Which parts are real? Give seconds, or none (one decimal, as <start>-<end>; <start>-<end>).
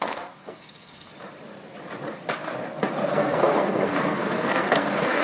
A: 1.1-3.1